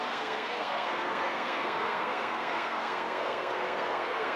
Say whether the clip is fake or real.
fake